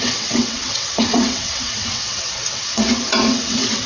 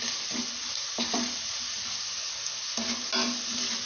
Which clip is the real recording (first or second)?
second